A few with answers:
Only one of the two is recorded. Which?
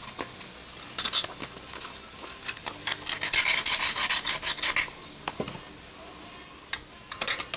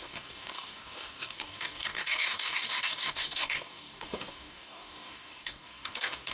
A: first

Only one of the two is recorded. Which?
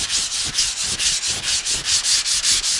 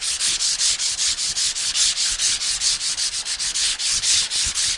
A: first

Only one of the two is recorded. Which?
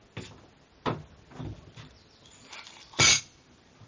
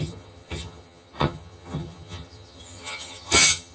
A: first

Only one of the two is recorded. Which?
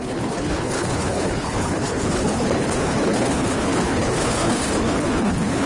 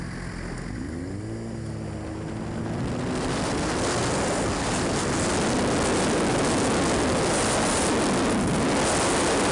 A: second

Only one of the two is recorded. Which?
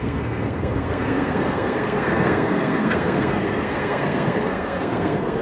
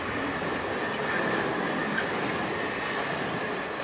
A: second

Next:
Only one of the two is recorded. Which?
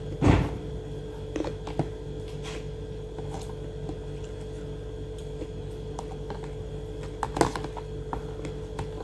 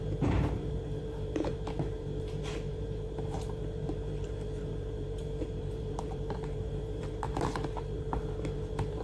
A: first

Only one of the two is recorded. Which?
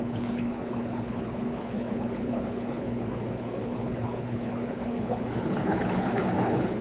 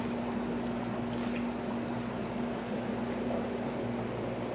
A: second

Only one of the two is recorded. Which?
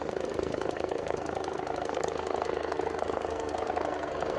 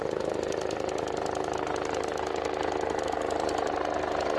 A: second